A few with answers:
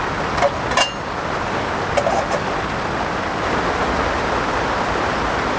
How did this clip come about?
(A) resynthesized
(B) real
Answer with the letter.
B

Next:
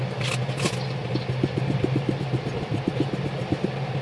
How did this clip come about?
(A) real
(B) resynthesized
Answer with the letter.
A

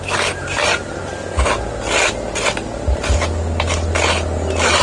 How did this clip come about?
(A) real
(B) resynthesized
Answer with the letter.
A